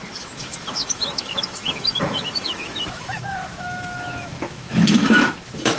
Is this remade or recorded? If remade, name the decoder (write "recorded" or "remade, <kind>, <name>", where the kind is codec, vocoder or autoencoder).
remade, autoencoder, DAC-VAE